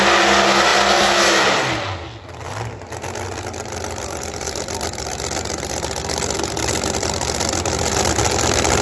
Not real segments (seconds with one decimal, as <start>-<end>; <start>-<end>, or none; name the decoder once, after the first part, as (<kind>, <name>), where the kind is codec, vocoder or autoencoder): none